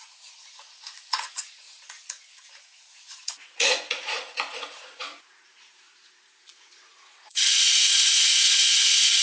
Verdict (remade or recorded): remade